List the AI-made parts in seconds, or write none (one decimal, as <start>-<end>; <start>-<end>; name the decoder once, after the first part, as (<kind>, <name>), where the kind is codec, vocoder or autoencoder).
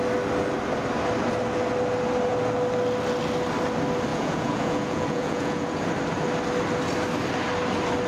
4.1-5.9 (vocoder, Vocos)